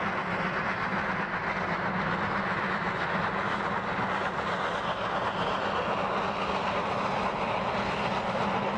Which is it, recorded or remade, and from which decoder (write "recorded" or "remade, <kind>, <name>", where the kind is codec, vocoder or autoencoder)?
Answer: recorded